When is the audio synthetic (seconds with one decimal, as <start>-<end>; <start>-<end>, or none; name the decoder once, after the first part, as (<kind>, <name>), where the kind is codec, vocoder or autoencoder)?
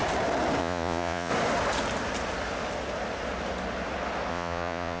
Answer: 0.6-1.3 (vocoder, Vocos); 4.3-5.0